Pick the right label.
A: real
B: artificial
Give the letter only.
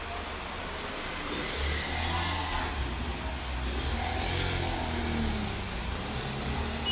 A